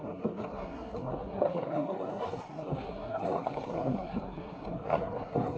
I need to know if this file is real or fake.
fake